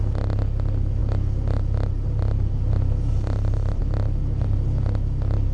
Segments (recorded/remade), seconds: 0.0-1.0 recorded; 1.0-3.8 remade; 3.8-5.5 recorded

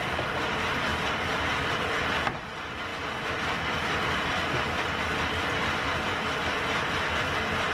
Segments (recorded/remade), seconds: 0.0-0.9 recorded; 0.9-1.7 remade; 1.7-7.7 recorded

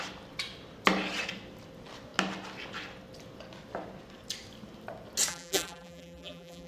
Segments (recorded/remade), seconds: 0.0-5.3 recorded; 5.3-6.7 remade